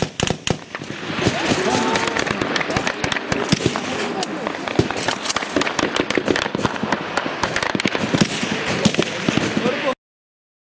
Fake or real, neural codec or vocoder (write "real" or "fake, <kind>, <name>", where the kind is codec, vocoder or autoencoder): real